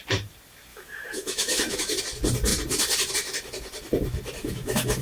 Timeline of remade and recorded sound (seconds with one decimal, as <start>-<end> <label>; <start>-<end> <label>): 0.0-0.7 recorded; 0.7-2.0 remade; 2.0-4.4 recorded; 4.4-5.0 remade